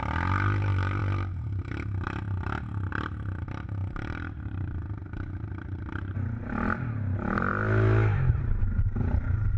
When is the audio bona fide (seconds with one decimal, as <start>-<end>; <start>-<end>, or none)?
0.0-1.0; 1.7-9.6